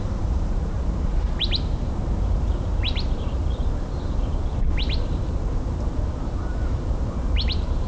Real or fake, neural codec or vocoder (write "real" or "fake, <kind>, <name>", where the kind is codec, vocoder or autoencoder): fake, vocoder, BigVGAN v2